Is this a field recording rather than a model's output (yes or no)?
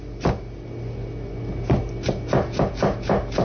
yes